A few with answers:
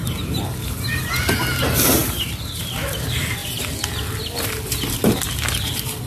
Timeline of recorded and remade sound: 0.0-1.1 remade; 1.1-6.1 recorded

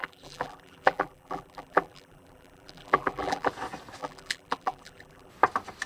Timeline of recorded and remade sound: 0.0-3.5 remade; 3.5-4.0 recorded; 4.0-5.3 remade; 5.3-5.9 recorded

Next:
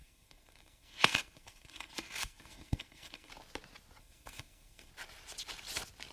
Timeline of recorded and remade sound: 0.0-3.3 remade; 3.3-4.0 recorded; 4.0-4.9 remade; 4.9-6.1 recorded

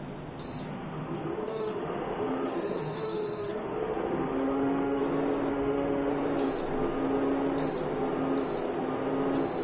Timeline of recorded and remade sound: 0.0-0.7 recorded; 0.7-5.0 remade; 5.0-5.5 recorded; 5.5-6.1 remade; 6.1-9.6 recorded